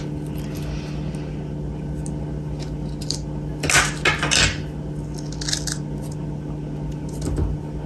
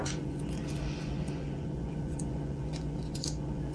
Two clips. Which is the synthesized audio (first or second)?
second